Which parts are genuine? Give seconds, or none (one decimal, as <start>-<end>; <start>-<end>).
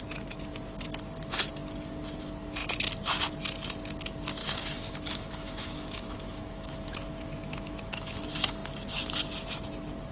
0.0-4.4; 8.2-10.1